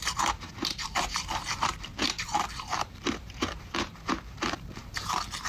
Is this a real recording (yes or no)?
no